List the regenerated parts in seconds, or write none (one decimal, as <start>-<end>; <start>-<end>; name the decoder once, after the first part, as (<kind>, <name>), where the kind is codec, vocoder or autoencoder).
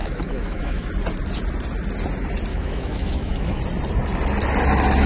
0.0-0.9 (autoencoder, DAC-VAE); 2.5-3.6